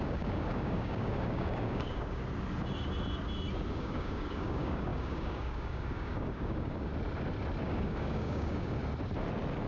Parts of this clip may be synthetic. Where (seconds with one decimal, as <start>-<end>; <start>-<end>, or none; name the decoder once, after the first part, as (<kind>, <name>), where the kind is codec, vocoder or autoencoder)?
0.0-2.2 (codec, DAC); 3.7-6.9; 7.6-8.8